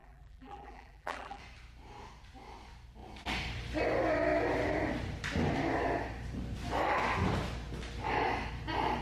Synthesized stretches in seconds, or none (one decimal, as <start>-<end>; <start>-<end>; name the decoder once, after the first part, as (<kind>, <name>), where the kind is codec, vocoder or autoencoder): 0.0-1.4 (vocoder, BigVGAN v2)